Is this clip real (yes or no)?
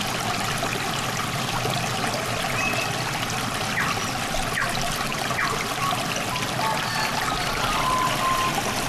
yes